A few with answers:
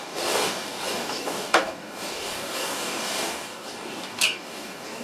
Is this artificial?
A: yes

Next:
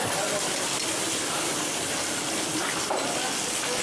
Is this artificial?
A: no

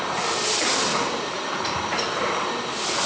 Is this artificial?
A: no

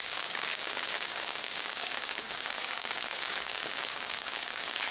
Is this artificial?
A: yes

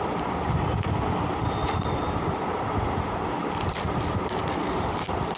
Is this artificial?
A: no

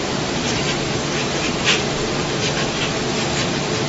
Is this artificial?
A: no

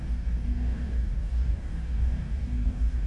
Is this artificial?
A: yes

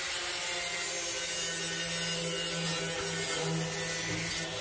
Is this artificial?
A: no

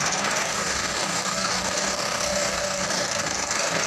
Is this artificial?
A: yes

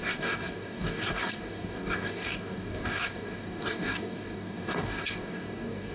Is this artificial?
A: yes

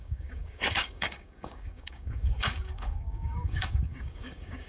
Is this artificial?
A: yes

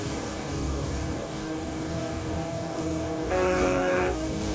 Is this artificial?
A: yes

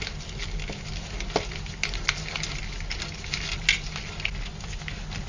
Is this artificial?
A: no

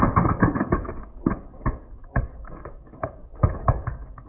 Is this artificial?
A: yes